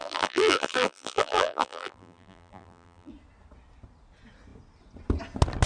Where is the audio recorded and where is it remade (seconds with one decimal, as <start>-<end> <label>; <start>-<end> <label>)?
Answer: 0.0-3.1 remade; 3.1-5.7 recorded

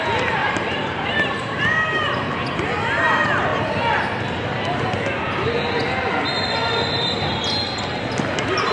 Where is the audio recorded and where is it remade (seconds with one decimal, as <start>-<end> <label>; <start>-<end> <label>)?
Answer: 0.0-0.4 recorded; 0.4-1.6 remade; 1.6-8.7 recorded

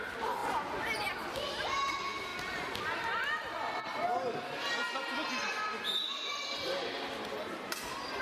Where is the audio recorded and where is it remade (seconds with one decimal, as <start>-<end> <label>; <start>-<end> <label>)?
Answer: 0.0-8.2 recorded

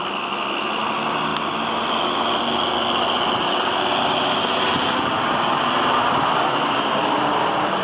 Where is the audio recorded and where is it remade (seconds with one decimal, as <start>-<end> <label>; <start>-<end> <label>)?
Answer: 0.0-1.3 recorded; 1.3-6.0 remade; 6.0-7.8 recorded

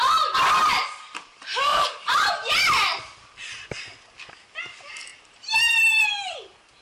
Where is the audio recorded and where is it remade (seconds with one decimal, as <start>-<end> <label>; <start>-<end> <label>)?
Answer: 0.0-0.6 recorded; 0.6-1.2 remade; 1.2-1.7 recorded; 1.7-2.3 remade; 2.3-6.8 recorded

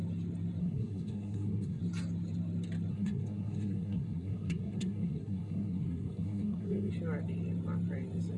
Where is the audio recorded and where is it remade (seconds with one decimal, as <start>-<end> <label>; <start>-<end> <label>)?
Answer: 0.0-0.6 recorded; 0.6-1.8 remade; 1.8-2.9 recorded; 2.9-6.9 remade; 6.9-8.4 recorded

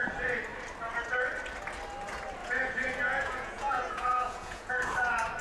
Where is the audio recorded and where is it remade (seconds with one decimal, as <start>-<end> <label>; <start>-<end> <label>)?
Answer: 0.0-2.4 recorded; 2.4-4.7 remade; 4.7-5.4 recorded